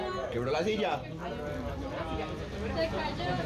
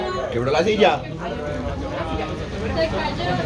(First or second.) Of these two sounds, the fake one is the second